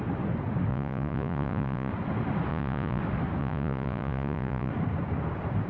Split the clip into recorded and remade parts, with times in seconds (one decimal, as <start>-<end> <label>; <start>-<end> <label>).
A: 0.0-0.7 recorded; 0.7-1.9 remade; 1.9-2.5 recorded; 2.5-3.0 remade; 3.0-3.4 recorded; 3.4-4.7 remade; 4.7-5.7 recorded

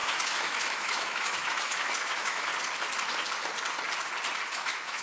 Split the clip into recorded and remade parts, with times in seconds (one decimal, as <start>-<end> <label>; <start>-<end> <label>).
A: 0.0-2.5 remade; 2.5-4.5 recorded; 4.5-5.0 remade

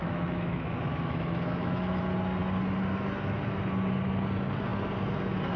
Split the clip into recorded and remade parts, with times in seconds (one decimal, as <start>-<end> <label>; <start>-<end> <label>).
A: 0.0-2.0 remade; 2.0-5.6 recorded

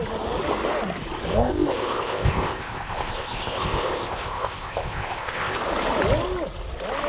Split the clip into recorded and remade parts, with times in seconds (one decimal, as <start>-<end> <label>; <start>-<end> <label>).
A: 0.0-1.3 recorded; 1.3-5.6 remade; 5.6-7.1 recorded

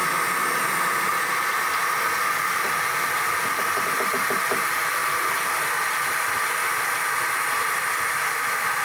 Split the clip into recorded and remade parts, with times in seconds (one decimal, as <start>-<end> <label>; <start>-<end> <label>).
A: 0.0-8.8 recorded

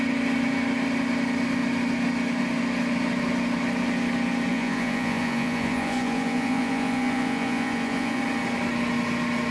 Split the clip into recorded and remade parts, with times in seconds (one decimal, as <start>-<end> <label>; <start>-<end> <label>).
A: 0.0-4.5 recorded; 4.5-8.2 remade; 8.2-9.5 recorded

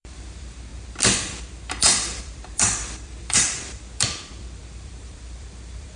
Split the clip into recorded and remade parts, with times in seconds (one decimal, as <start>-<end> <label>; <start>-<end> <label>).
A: 0.0-6.0 remade